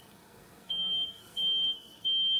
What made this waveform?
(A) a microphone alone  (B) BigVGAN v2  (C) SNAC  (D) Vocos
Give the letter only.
C